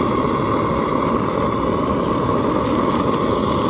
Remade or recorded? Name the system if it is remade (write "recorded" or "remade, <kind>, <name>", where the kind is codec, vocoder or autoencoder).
recorded